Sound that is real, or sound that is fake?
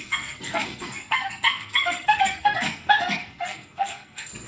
fake